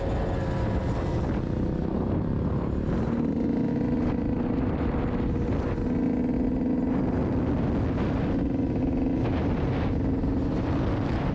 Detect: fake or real real